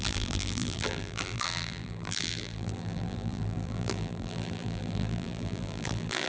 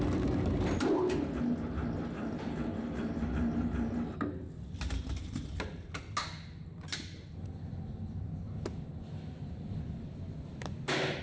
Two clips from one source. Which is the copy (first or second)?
first